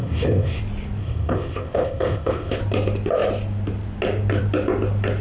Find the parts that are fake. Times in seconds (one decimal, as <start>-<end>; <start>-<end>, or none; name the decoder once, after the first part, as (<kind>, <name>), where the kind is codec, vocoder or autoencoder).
0.0-0.6 (codec, ZipCodec); 1.0-2.6